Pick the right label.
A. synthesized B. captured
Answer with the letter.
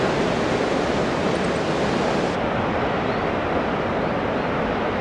B